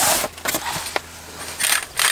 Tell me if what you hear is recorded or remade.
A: recorded